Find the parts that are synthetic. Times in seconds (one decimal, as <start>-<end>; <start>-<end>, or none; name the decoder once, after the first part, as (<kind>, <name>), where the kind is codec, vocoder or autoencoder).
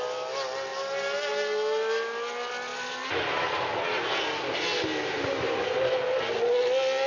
none